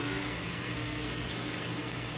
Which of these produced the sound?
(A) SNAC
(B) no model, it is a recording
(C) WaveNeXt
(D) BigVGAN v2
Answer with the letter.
A